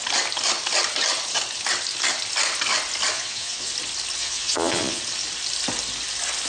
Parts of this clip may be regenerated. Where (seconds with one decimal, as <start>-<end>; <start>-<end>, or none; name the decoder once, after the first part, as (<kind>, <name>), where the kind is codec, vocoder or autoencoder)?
3.1-3.7 (vocoder, Vocos); 4.2-5.0